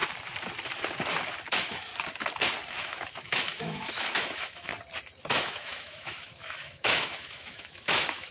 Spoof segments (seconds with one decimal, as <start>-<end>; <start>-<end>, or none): 1.5-1.9; 2.8-4.7; 5.4-8.3